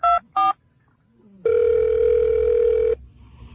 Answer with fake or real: real